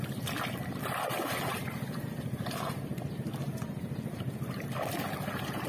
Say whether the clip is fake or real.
real